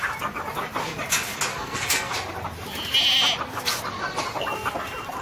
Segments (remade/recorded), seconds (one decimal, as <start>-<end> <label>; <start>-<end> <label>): 0.0-1.5 recorded; 1.5-2.1 remade; 2.1-5.2 recorded